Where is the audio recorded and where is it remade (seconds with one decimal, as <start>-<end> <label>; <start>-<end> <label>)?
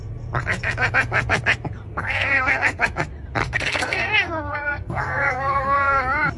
0.0-1.9 recorded; 1.9-2.8 remade; 2.8-3.4 recorded; 3.4-6.0 remade; 6.0-6.4 recorded